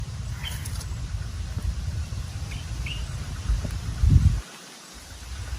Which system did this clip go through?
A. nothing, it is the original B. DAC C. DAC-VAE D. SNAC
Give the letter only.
A